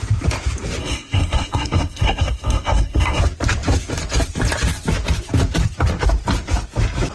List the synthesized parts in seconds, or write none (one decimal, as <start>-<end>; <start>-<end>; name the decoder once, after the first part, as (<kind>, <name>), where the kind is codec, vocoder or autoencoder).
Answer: 0.8-3.2 (codec, SNAC)